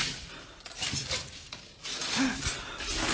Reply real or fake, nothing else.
real